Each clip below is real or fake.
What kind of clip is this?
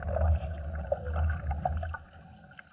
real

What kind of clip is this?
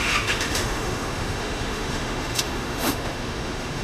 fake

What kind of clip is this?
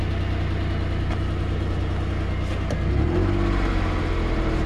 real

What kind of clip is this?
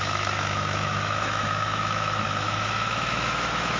fake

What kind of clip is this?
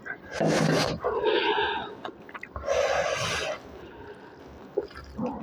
real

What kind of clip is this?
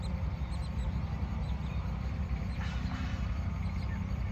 real